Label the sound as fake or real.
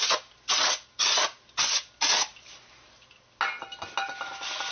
real